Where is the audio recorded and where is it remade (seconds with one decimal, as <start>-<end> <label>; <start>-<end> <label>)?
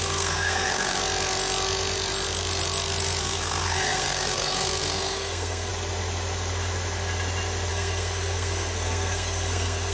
0.0-1.0 remade; 1.0-3.2 recorded; 3.2-5.7 remade; 5.7-7.7 recorded; 7.7-9.9 remade